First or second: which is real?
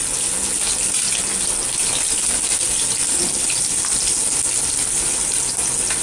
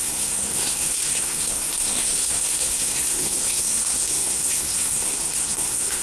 first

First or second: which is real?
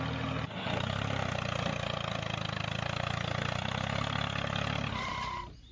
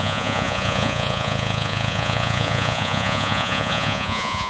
first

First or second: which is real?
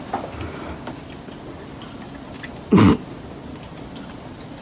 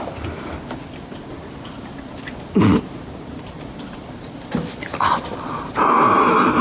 first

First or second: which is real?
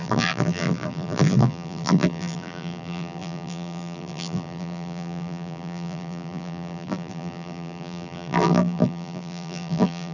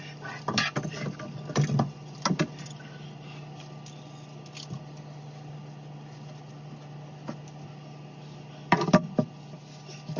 second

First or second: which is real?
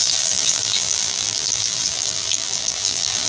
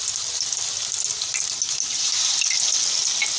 second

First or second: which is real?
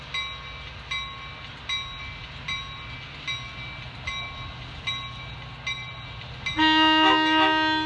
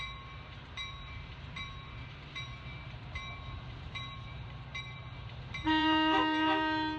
first